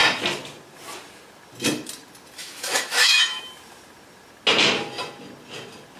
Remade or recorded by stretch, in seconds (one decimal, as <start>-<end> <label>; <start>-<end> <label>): 0.0-2.4 recorded; 2.4-3.4 remade; 3.4-6.0 recorded

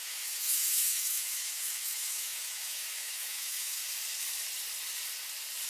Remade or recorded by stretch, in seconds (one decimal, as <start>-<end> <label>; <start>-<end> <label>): 0.0-3.8 remade; 3.8-5.7 recorded

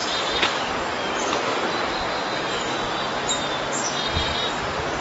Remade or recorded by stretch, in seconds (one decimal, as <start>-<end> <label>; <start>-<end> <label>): 0.0-0.7 remade; 0.7-5.0 recorded

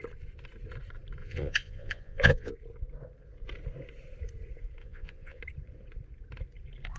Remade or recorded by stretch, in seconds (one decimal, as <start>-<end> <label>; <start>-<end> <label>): 0.0-1.2 recorded; 1.2-2.5 remade; 2.5-4.8 recorded; 4.8-5.4 remade; 5.4-7.0 recorded

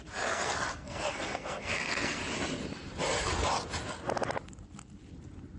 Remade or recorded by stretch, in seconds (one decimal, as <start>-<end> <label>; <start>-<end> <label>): 0.0-2.2 remade; 2.2-5.6 recorded

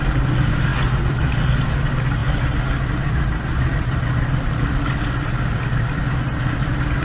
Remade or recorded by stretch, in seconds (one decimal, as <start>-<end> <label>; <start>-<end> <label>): 0.0-7.0 recorded